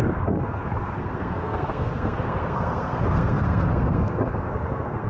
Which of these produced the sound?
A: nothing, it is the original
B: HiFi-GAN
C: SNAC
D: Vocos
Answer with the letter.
C